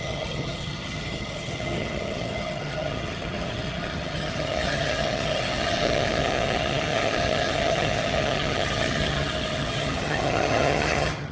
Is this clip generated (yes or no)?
yes